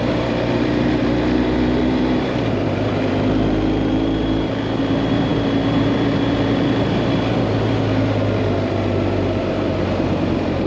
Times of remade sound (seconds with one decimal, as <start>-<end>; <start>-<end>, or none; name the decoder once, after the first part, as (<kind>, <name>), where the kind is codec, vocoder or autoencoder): 0.0-10.7 (vocoder, BigVGAN v2)